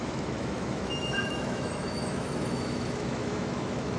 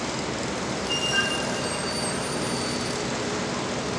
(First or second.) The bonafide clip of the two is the second